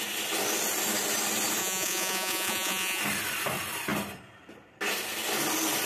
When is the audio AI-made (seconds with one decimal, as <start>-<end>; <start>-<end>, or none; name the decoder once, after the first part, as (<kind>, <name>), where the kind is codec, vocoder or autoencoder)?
1.6-3.0 (vocoder, Vocos)